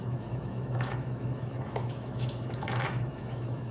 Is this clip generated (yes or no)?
yes